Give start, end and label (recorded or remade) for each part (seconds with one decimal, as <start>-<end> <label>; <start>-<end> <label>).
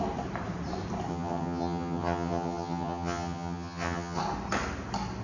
0.0-1.1 recorded; 1.1-4.2 remade; 4.2-5.2 recorded